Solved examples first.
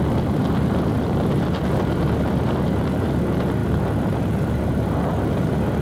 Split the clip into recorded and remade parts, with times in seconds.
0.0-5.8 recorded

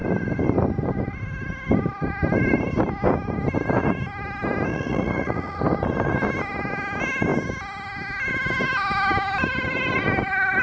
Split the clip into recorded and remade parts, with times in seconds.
0.0-4.7 recorded; 4.7-5.6 remade; 5.6-10.6 recorded

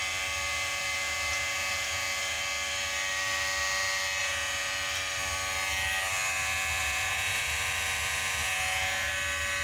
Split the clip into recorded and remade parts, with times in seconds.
0.0-0.5 recorded; 0.5-2.4 remade; 2.4-4.2 recorded; 4.2-4.7 remade; 4.7-6.8 recorded; 6.8-7.4 remade; 7.4-8.4 recorded; 8.4-9.1 remade; 9.1-9.6 recorded

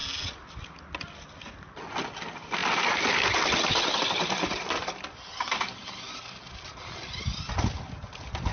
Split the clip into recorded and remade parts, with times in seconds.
0.0-8.5 recorded

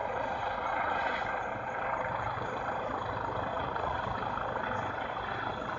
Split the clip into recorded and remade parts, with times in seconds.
0.0-1.2 remade; 1.2-3.5 recorded; 3.5-4.0 remade; 4.0-5.8 recorded

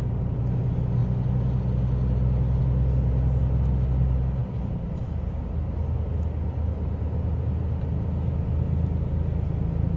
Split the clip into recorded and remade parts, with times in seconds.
0.0-10.0 recorded

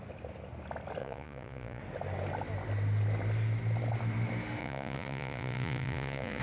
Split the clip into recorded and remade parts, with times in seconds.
0.0-1.0 recorded; 1.0-1.8 remade; 1.8-4.6 recorded; 4.6-6.4 remade

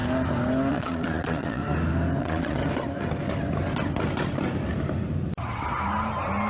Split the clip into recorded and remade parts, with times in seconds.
0.0-0.7 recorded; 0.7-1.6 remade; 1.6-2.2 recorded; 2.2-2.6 remade; 2.6-6.5 recorded